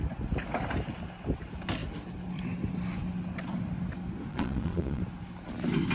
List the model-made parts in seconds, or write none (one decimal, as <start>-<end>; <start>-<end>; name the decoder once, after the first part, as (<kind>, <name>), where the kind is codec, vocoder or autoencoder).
4.3-5.0 (vocoder, Vocos)